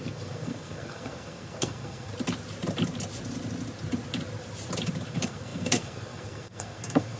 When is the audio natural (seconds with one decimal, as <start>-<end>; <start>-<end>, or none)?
2.1-5.1